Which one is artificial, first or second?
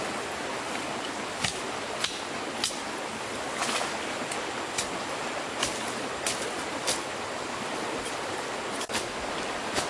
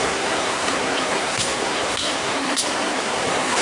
second